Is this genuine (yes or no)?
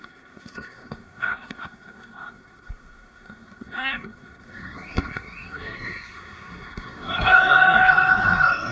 no